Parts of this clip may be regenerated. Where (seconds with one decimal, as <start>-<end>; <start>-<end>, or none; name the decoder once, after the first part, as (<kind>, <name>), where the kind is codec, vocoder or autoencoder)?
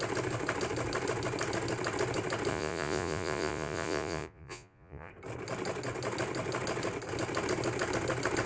2.5-5.1 (vocoder, Vocos)